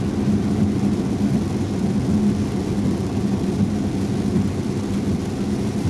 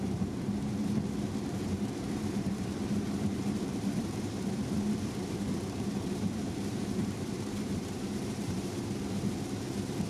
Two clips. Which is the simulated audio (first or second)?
second